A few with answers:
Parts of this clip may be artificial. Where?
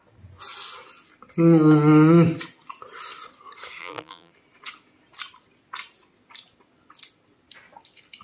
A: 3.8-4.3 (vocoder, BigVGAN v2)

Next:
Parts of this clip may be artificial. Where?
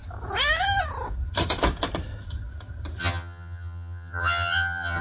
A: 3.0-5.0 (vocoder, HiFi-GAN)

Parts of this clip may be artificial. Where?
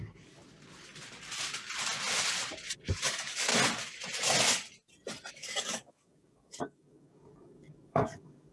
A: 0.0-0.4 (codec, DAC); 3.0-3.5; 5.3-8.5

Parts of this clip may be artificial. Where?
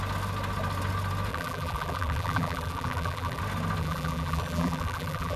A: 1.3-3.4 (vocoder, BigVGAN v2); 3.8-5.4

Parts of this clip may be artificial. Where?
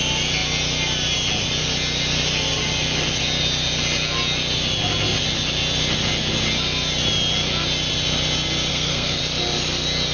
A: 8.7-9.2 (codec, SNAC)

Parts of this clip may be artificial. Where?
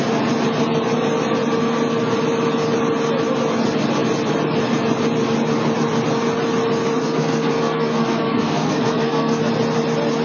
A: 7.0-9.4 (codec, SNAC)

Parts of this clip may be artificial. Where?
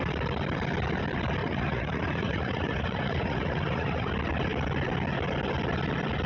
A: 1.4-4.1 (vocoder, Vocos)